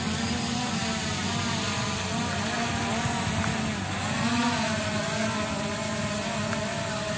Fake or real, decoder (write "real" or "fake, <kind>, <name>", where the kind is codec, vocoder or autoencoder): real